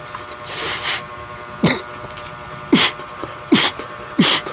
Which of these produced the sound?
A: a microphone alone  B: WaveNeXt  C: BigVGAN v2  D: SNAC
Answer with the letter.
C